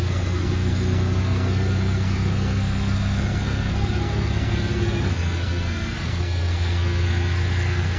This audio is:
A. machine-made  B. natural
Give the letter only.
A